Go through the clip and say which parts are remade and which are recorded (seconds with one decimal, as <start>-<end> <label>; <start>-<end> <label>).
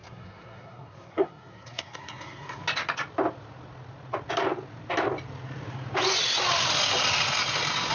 0.0-2.6 remade; 2.6-7.9 recorded